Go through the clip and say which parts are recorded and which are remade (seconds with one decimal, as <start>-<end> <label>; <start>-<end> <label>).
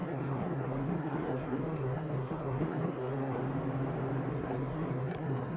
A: 0.0-3.4 remade; 3.4-4.3 recorded; 4.3-5.6 remade